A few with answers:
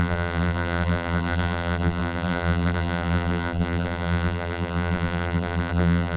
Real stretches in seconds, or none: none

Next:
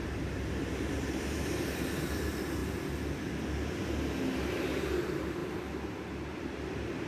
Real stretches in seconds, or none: 0.0-7.1

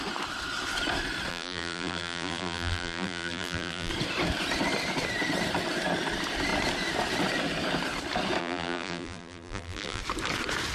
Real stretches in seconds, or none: 0.0-1.3; 3.9-8.4; 10.0-10.7

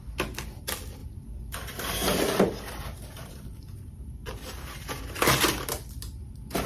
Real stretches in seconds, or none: 0.0-1.0; 5.0-6.7

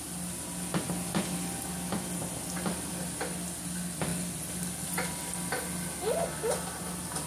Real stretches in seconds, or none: 0.0-2.2; 2.9-7.3

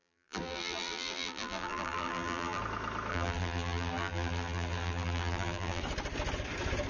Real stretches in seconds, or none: 2.6-3.1; 5.8-6.9

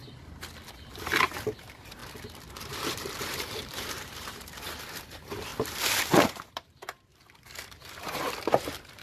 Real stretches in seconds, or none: 0.0-1.6; 2.0-2.6; 5.5-6.0; 7.1-7.8